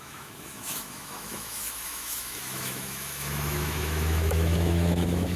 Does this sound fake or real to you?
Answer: fake